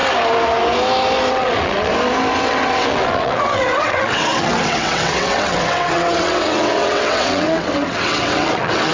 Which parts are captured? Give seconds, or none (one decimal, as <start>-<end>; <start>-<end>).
0.0-1.3; 1.9-2.4